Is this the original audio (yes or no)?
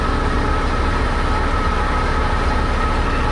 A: yes